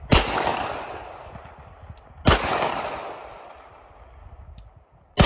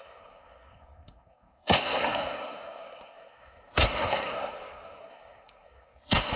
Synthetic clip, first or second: second